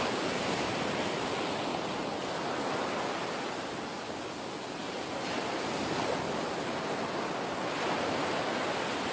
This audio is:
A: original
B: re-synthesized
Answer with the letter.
A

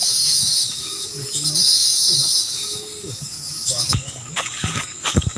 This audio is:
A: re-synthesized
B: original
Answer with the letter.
A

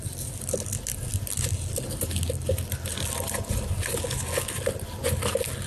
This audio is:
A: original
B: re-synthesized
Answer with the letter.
A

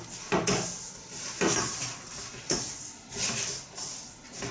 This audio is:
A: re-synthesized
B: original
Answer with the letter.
B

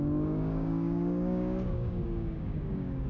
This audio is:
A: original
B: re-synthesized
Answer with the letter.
B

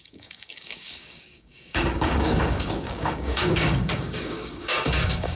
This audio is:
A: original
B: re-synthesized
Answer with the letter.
B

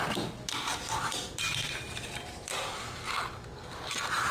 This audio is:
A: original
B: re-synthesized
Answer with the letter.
A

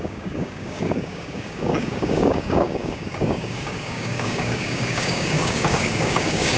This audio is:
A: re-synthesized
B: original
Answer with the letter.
A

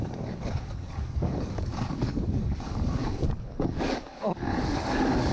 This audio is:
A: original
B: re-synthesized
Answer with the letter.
B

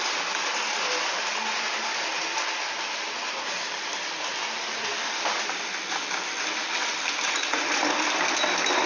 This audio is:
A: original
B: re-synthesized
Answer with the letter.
A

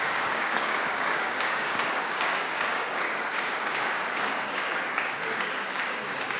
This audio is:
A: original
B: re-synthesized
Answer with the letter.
B